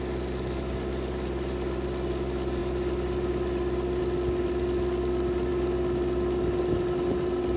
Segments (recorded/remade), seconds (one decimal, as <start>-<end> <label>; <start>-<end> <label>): 0.0-7.6 recorded